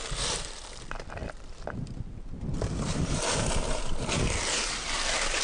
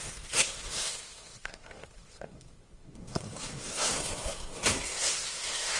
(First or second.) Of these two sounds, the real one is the first